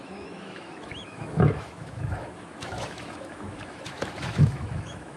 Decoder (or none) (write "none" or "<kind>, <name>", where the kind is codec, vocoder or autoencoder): autoencoder, DAC-VAE